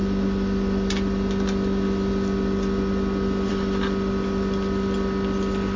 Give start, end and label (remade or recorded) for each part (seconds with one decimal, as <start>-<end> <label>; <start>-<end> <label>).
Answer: 0.0-5.8 recorded